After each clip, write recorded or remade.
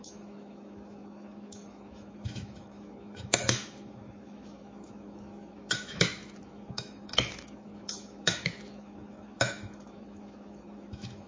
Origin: remade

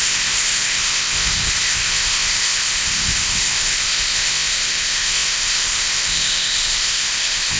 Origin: remade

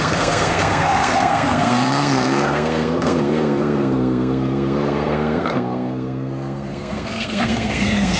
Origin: remade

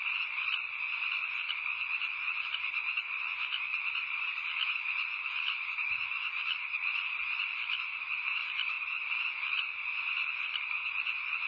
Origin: remade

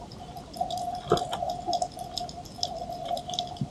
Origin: recorded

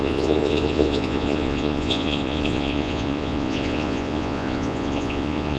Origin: remade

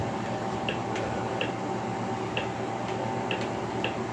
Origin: recorded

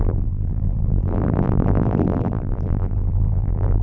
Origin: remade